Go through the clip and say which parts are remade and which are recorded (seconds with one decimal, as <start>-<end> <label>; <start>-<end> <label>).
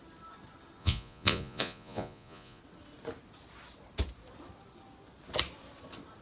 0.0-0.8 recorded; 0.8-2.6 remade; 2.6-6.2 recorded